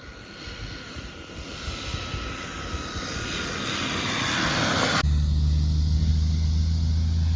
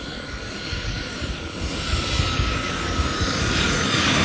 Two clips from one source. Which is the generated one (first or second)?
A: second